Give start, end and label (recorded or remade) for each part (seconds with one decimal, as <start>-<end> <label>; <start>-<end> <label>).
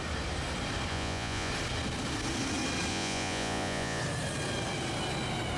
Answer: 0.0-0.9 recorded; 0.9-1.5 remade; 1.5-2.9 recorded; 2.9-4.0 remade; 4.0-5.6 recorded